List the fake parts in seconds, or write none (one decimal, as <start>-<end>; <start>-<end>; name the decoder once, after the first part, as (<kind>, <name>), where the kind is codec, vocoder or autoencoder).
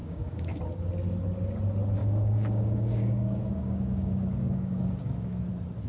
0.0-0.6 (codec, DAC); 2.0-5.5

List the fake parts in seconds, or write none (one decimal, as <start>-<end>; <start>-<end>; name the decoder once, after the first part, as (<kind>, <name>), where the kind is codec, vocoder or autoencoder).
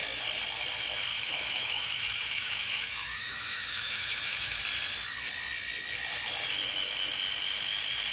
1.1-4.6 (autoencoder, DAC-VAE)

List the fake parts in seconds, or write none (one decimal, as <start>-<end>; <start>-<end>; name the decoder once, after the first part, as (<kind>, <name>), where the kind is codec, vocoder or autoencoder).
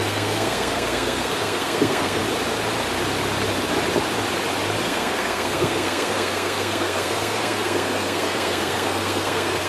0.0-2.2 (codec, SNAC); 4.8-9.7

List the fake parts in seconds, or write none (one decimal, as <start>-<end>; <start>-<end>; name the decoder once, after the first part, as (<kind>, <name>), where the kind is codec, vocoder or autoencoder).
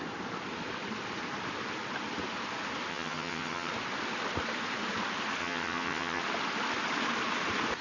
2.9-3.7 (vocoder, HiFi-GAN); 5.4-6.2